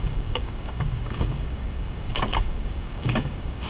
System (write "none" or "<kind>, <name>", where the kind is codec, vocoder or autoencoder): codec, DAC